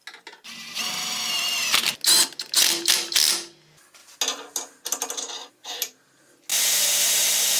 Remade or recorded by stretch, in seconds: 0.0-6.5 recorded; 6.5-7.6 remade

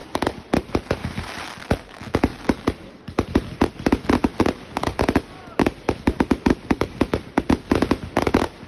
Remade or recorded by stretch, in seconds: 0.0-1.3 remade; 1.3-4.3 recorded; 4.3-7.5 remade; 7.5-8.7 recorded

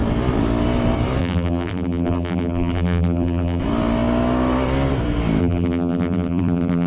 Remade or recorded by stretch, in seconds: 0.0-1.2 recorded; 1.2-3.6 remade; 3.6-5.4 recorded; 5.4-6.9 remade